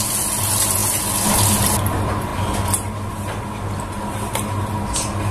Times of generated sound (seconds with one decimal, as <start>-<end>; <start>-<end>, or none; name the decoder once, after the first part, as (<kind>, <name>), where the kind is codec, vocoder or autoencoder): none